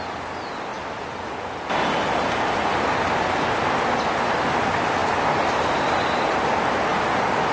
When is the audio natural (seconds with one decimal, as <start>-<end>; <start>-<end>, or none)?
0.0-7.5